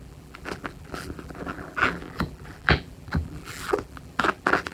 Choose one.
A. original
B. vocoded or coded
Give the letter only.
B